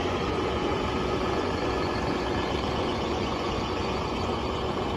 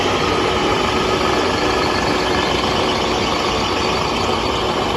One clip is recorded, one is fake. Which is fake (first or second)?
first